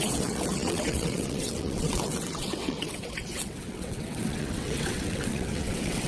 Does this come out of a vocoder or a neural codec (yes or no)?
yes